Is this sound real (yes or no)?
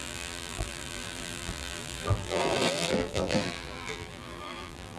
no